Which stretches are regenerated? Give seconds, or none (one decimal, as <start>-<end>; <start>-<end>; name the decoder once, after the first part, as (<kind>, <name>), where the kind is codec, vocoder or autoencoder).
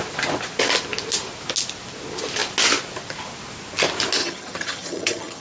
4.2-5.4 (vocoder, HiFi-GAN)